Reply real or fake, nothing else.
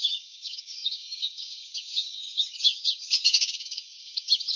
fake